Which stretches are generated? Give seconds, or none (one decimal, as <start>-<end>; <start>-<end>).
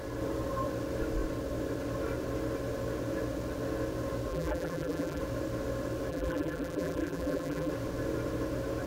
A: 4.3-5.2; 6.1-7.7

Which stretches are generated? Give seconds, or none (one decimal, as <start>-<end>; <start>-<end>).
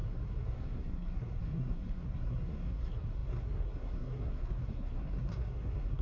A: 0.0-6.0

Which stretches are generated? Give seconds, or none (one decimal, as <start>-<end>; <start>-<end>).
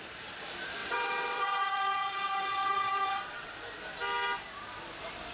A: 0.8-3.5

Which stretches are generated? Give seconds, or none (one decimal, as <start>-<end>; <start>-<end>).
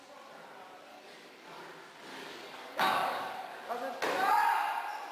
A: 0.9-1.6; 2.1-3.7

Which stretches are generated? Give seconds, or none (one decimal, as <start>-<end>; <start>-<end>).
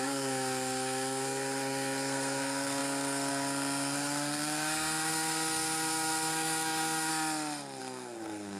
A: 0.0-7.1; 7.8-8.6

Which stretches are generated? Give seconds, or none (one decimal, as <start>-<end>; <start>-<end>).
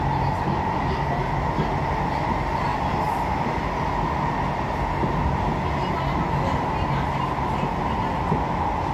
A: none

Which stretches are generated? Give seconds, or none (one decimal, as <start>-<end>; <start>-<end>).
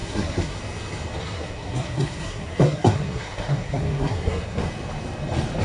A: 0.0-0.6; 1.2-4.6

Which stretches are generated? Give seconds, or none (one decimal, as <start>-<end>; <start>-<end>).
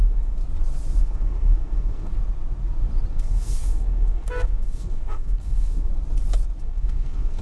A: 0.0-0.4; 1.0-2.1; 3.1-5.9; 6.6-7.4